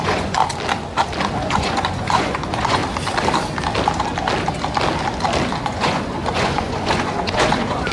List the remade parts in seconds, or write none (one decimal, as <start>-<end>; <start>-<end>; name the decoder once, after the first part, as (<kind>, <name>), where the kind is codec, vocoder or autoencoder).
0.0-0.4 (vocoder, Vocos); 1.2-2.8; 5.6-7.9